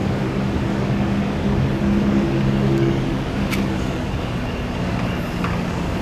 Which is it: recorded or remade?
remade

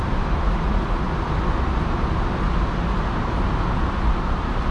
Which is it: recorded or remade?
recorded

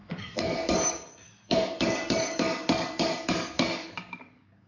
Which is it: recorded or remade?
remade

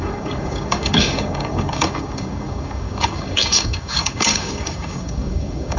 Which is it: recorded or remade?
remade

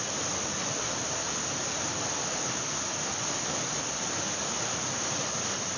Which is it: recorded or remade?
recorded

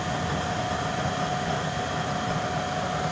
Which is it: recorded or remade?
recorded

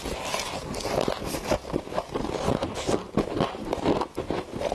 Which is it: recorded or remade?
recorded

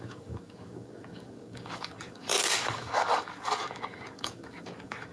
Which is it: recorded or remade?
remade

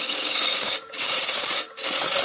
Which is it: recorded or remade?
remade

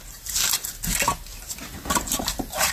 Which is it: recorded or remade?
recorded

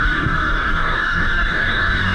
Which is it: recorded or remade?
remade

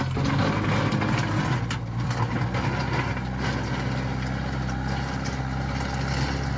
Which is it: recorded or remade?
recorded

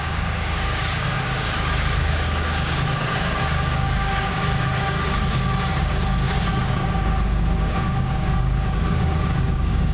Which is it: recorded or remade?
remade